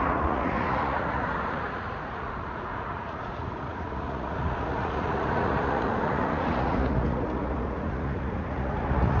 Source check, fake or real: fake